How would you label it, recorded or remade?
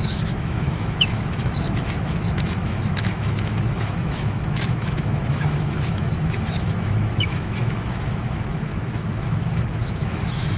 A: remade